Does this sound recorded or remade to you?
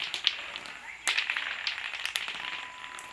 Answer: recorded